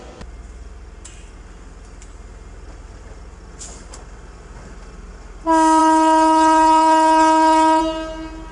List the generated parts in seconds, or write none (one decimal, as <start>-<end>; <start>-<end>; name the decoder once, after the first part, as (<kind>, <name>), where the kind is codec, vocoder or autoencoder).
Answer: 5.8-7.8 (codec, HILCodec)